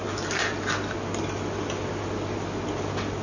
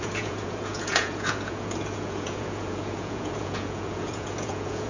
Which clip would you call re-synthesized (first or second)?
second